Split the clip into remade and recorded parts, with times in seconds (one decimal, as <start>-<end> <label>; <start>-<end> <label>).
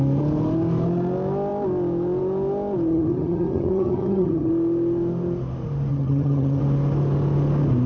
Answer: 0.0-2.9 recorded; 2.9-4.5 remade; 4.5-5.9 recorded; 5.9-6.6 remade; 6.6-7.9 recorded